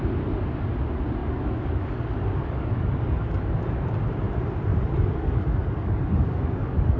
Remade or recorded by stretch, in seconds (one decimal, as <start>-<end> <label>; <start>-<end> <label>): 0.0-1.2 recorded; 1.2-4.0 remade; 4.0-4.7 recorded; 4.7-7.0 remade